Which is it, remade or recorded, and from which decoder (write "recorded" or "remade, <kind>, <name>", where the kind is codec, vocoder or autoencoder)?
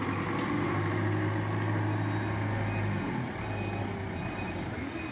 recorded